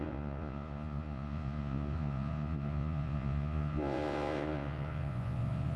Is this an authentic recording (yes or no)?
no